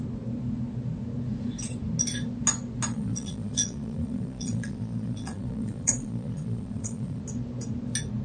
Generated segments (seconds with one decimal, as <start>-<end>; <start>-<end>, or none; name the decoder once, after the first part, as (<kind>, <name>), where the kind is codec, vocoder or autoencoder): 2.9-7.2 (vocoder, Vocos)